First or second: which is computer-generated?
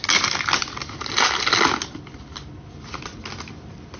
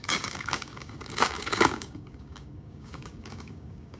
second